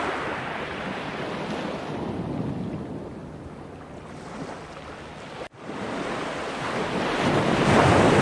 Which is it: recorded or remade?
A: recorded